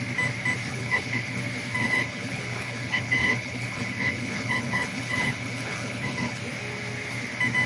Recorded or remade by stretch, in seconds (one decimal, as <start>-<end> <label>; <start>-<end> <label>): 0.0-0.7 recorded; 0.7-1.4 remade; 1.4-1.8 recorded; 1.8-6.4 remade; 6.4-7.7 recorded